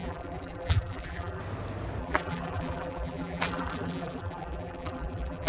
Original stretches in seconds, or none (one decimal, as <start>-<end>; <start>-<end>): 1.4-2.0